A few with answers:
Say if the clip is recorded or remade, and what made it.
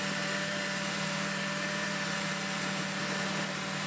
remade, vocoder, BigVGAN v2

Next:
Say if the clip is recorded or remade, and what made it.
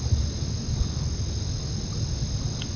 recorded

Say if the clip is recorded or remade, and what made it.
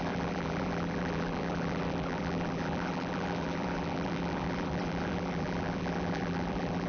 remade, vocoder, BigVGAN v2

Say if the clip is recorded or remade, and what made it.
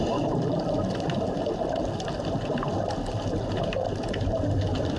recorded